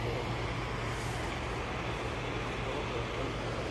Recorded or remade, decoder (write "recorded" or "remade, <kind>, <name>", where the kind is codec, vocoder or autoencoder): recorded